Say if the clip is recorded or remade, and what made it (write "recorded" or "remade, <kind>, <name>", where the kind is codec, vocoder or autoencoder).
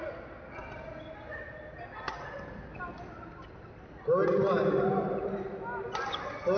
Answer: recorded